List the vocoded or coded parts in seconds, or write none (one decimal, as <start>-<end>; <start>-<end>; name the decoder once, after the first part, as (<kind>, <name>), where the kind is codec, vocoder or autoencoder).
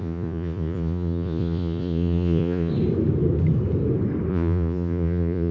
0.0-2.7 (vocoder, Vocos); 4.3-5.5